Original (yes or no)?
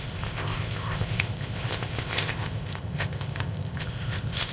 no